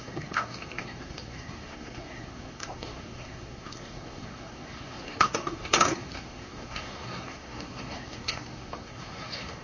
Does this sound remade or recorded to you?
remade